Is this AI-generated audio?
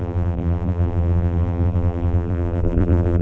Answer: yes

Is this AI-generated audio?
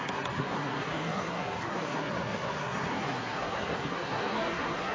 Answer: yes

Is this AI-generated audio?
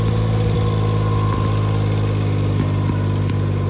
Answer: no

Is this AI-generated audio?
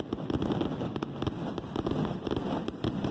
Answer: no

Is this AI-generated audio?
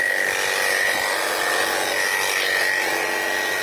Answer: no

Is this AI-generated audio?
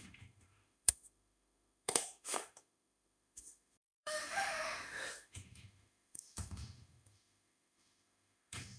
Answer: yes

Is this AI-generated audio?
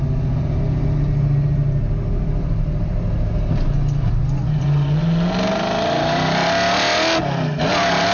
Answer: no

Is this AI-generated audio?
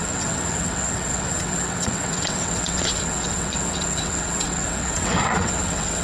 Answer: yes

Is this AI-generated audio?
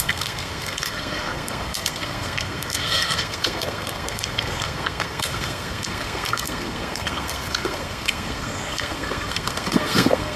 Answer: yes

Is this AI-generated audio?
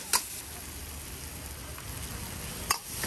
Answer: no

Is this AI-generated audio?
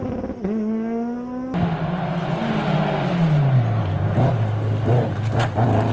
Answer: no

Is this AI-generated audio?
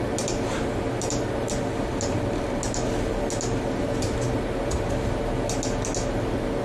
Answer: no